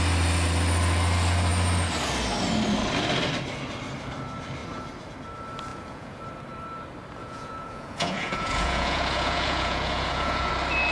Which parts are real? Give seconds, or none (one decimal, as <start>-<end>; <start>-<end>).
0.0-5.7; 6.2-7.2; 10.5-10.9